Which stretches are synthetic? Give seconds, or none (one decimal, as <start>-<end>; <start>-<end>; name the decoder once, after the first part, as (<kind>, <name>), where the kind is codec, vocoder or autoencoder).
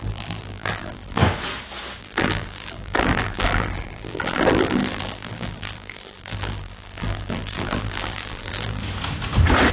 0.0-1.2 (vocoder, BigVGAN v2); 2.0-8.8